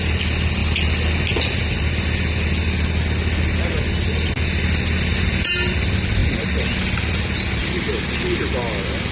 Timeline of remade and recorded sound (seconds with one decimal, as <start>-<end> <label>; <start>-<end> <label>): 0.0-9.1 recorded